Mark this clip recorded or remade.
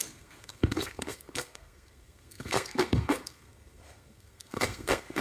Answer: remade